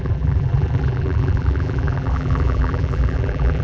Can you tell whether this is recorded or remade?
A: remade